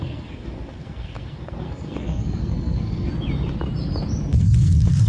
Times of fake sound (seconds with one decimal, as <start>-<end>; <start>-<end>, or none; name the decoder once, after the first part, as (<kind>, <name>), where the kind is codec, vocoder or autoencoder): 0.0-3.1 (codec, SNAC); 4.3-5.1